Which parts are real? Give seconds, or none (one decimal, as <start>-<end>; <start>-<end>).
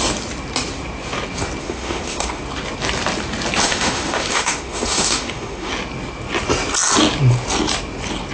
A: 0.0-1.6; 2.4-3.6; 5.7-8.3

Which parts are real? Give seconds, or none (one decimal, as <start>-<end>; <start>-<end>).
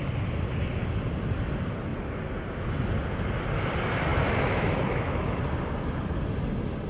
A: 0.0-4.1; 5.4-6.9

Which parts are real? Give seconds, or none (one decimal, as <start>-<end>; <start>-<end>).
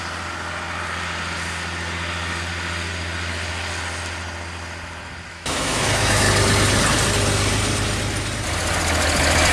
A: 0.0-5.3; 6.3-9.5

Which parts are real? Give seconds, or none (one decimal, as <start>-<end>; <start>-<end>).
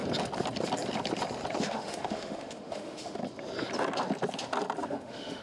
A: 0.0-1.6; 3.2-4.8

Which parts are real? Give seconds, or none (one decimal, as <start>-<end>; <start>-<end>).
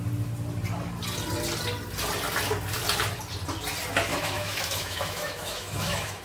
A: 0.0-4.1